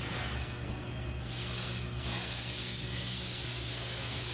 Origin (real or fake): fake